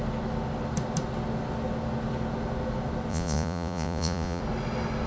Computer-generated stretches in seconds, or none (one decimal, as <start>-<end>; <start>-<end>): 3.1-4.4